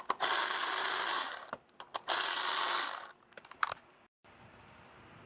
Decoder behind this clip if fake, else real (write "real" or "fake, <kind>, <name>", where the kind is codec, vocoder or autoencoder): real